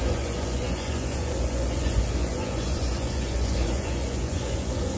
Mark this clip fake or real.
fake